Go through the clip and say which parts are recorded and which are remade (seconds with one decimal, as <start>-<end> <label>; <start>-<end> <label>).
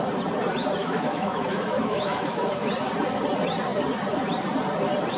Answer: 0.0-0.8 recorded; 0.8-2.7 remade; 2.7-5.2 recorded